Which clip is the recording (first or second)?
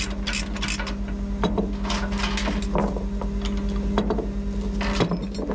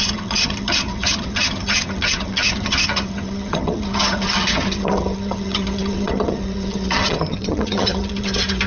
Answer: first